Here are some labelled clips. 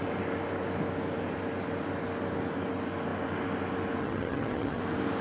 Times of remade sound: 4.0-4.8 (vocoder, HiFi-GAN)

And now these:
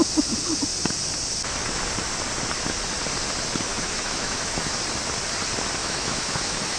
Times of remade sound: 3.7-4.7 (autoencoder, DAC-VAE); 5.8-6.8